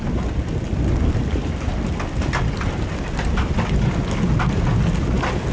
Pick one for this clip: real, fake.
real